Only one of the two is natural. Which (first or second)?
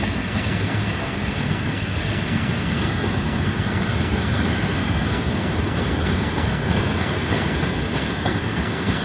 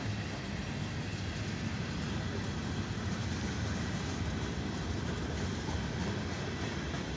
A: second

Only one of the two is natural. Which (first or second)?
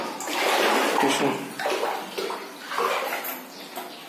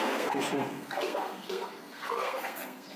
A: first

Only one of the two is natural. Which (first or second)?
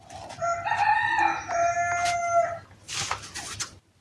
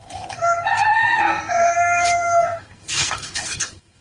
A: first